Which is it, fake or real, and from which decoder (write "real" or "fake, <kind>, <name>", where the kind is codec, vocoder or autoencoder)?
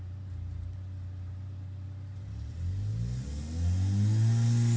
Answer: real